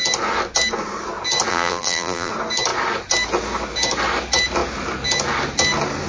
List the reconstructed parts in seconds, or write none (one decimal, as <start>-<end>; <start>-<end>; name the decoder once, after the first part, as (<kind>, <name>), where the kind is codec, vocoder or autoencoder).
1.5-2.3 (vocoder, BigVGAN v2)